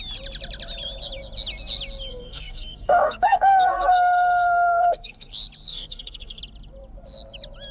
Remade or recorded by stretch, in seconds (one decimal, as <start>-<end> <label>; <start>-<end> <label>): 0.0-2.1 recorded; 2.1-5.3 remade; 5.3-5.7 recorded; 5.7-6.4 remade; 6.4-7.7 recorded